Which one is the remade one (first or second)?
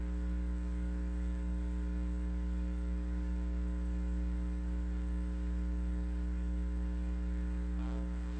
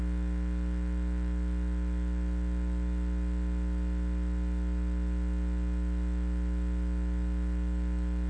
first